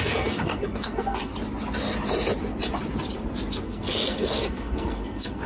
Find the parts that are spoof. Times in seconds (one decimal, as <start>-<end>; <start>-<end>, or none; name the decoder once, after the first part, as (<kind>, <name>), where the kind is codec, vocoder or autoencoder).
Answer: 0.0-1.3 (codec, SNAC); 3.6-5.5